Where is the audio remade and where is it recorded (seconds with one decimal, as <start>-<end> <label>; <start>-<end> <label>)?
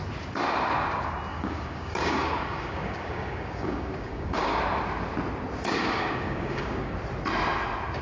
0.0-1.3 recorded; 1.3-4.6 remade; 4.6-5.8 recorded; 5.8-6.9 remade; 6.9-8.0 recorded